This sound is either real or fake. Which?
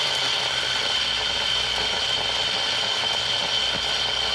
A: real